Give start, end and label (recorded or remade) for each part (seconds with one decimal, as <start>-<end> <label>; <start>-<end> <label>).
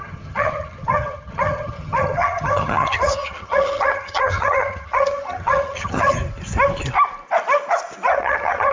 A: 0.0-6.2 remade; 6.2-8.1 recorded; 8.1-8.7 remade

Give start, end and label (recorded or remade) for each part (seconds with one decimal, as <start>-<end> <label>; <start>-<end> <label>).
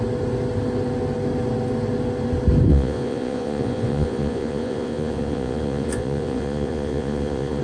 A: 0.0-2.7 recorded; 2.7-7.6 remade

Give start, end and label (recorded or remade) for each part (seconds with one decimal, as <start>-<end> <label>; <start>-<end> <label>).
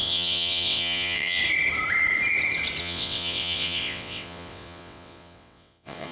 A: 0.0-1.4 remade; 1.4-2.8 recorded; 2.8-6.1 remade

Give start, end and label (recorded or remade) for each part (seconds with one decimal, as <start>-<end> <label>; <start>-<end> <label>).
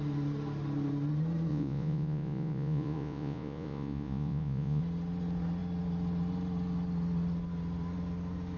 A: 0.0-1.5 recorded; 1.5-4.8 remade; 4.8-8.6 recorded